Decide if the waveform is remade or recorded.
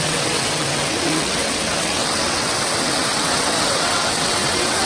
remade